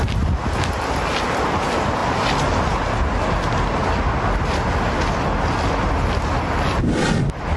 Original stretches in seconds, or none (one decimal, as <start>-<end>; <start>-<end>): 0.0-7.6